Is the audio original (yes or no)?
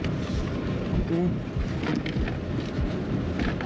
yes